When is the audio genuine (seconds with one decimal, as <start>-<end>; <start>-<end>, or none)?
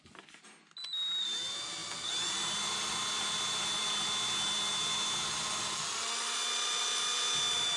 0.0-7.8